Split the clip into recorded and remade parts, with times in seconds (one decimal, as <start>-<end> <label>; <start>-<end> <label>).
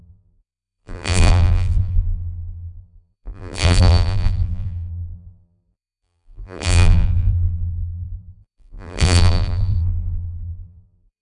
0.0-11.2 remade